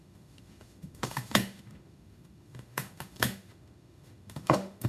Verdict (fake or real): fake